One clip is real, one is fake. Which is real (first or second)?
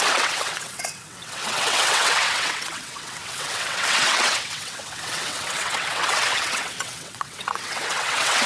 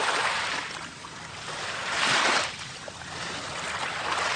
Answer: second